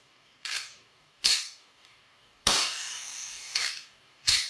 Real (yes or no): no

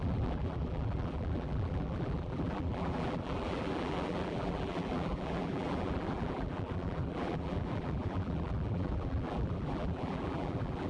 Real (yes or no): no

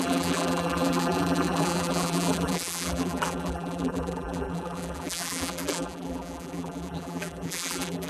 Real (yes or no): no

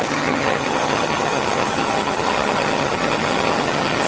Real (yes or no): no